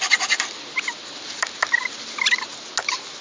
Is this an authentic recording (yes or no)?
yes